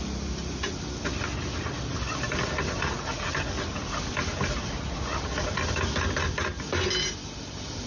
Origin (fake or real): real